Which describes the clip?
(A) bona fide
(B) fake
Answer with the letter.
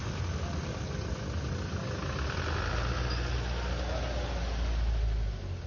A